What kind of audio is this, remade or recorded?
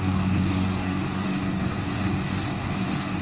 remade